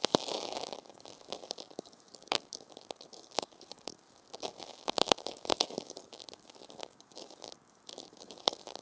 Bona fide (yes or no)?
no